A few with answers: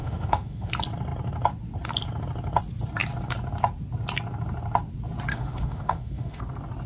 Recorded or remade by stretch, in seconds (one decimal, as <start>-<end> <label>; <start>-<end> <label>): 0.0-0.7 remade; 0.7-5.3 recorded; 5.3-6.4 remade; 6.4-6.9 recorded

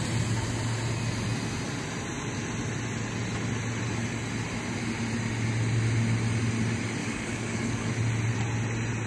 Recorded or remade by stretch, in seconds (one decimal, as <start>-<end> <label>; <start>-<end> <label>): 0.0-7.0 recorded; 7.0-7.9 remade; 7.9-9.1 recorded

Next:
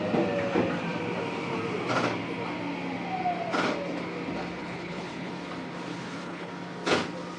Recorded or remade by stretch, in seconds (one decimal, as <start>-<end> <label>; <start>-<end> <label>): 0.0-4.6 recorded; 4.6-5.3 remade; 5.3-5.9 recorded; 5.9-6.5 remade; 6.5-7.4 recorded

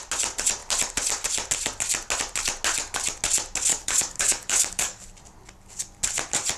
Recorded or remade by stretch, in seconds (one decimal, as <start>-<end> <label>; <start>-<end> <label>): 0.0-3.7 recorded; 3.7-5.0 remade; 5.0-6.6 recorded

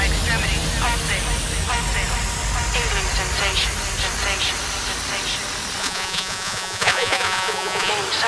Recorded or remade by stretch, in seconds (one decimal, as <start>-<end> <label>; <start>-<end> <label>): 0.0-5.8 recorded; 5.8-7.9 remade; 7.9-8.3 recorded